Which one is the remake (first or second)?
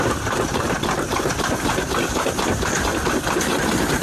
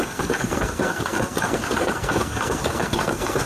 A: second